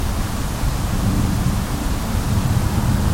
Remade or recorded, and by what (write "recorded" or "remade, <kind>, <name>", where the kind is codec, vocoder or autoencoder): recorded